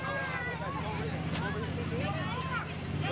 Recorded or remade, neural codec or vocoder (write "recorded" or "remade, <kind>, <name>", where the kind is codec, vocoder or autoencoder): recorded